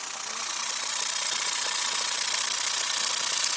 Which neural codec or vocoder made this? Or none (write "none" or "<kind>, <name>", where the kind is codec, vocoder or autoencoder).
none